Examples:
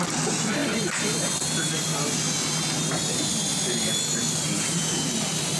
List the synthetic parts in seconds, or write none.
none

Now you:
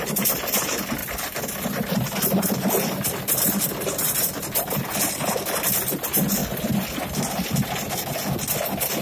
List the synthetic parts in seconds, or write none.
1.0-5.3 (vocoder, BigVGAN v2)

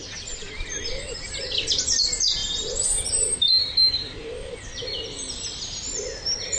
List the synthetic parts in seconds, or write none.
0.0-0.7 (vocoder, BigVGAN v2); 2.4-6.6

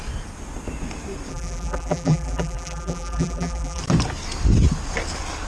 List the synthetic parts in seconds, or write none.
1.3-3.8 (vocoder, BigVGAN v2)

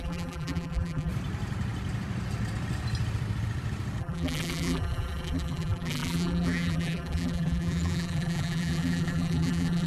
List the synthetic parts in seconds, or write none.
0.0-1.1 (vocoder, BigVGAN v2); 4.0-9.9

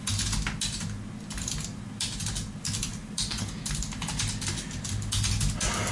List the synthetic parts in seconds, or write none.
2.8-3.5 (vocoder, BigVGAN v2)

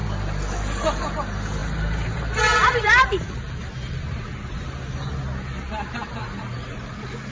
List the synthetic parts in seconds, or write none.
1.6-4.4 (vocoder, BigVGAN v2)